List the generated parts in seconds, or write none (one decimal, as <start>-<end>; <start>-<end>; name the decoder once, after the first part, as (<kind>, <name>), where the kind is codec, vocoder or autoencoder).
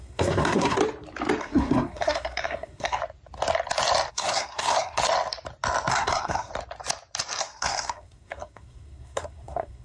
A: 0.0-0.8 (codec, SNAC); 1.4-3.0; 4.1-5.0; 5.9-6.5; 7.4-9.8